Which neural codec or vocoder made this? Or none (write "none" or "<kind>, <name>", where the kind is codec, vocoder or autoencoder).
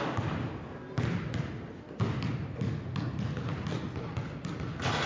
none